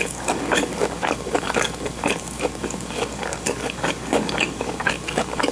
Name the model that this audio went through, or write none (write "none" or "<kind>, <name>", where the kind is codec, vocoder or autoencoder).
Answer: codec, DAC